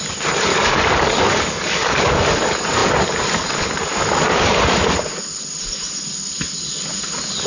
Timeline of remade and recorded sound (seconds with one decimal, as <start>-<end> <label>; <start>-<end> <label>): 0.0-0.5 recorded; 0.5-2.1 remade; 2.1-7.5 recorded